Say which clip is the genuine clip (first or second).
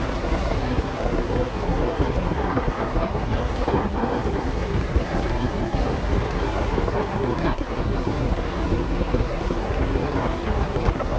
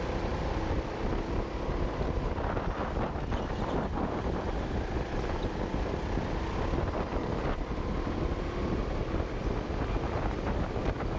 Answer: second